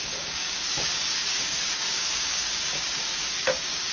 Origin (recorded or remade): remade